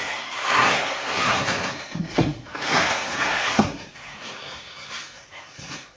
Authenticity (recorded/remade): remade